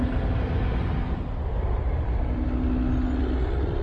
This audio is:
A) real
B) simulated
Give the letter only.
A